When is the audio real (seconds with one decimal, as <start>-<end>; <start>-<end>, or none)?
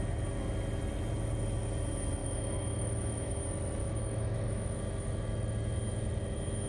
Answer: 0.0-2.2; 3.4-3.8; 4.8-6.7